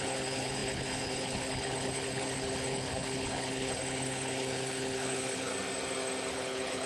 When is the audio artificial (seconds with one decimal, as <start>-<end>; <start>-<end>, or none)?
0.0-5.5; 6.3-6.9